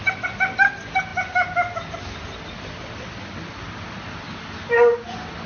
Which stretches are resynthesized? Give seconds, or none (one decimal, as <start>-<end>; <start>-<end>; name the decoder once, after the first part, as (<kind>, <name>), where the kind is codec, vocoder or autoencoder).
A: none